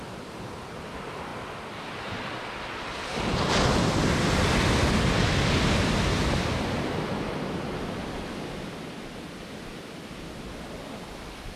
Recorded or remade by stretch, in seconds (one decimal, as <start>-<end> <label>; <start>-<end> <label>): 0.0-11.6 recorded